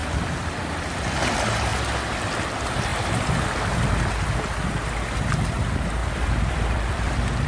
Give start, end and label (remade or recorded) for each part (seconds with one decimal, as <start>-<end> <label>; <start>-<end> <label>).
0.0-0.6 remade; 0.6-1.7 recorded; 1.7-2.3 remade; 2.3-2.9 recorded; 2.9-5.0 remade; 5.0-6.0 recorded; 6.0-7.5 remade